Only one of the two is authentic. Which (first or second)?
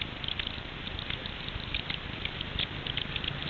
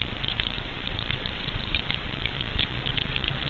first